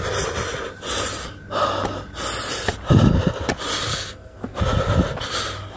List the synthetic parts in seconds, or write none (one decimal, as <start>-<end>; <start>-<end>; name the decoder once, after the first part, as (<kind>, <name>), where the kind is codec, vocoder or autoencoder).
3.9-4.6 (codec, SNAC)